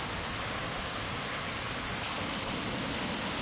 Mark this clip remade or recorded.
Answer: recorded